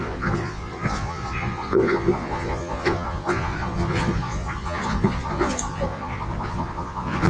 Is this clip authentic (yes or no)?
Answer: no